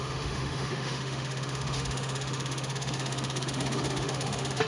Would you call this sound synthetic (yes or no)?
yes